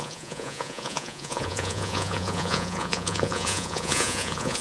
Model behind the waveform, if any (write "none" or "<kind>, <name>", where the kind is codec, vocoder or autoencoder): vocoder, Vocos